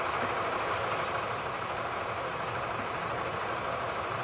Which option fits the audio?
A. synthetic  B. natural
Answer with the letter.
A